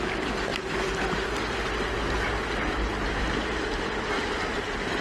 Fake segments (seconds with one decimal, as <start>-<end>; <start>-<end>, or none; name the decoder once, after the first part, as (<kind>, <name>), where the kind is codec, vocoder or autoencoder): none